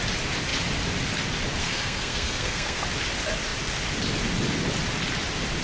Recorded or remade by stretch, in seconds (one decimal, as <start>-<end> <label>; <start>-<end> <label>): 0.0-1.6 recorded; 1.6-2.8 remade; 2.8-5.6 recorded